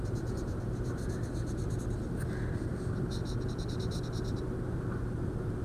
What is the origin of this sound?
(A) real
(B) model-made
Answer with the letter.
A